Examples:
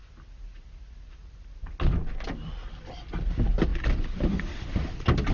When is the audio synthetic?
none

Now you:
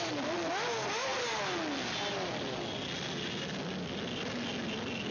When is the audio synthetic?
none

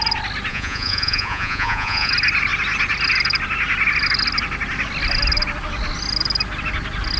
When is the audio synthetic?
0.5-2.1 (vocoder, Vocos)

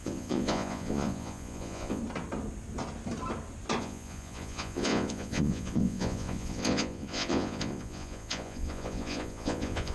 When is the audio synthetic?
0.0-2.0 (vocoder, Vocos); 3.8-9.9

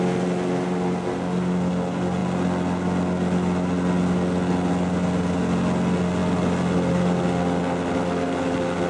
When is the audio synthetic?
none

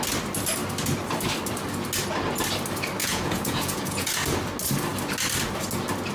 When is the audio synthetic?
3.0-4.1 (vocoder, Vocos)